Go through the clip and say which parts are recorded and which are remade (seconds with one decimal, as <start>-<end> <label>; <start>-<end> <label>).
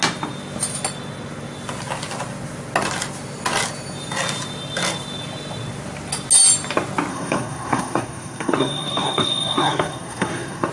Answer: 0.0-7.1 recorded; 7.1-10.7 remade